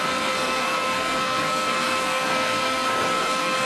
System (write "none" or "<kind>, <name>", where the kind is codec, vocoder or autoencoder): codec, SNAC